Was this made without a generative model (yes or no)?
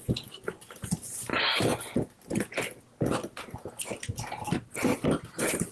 yes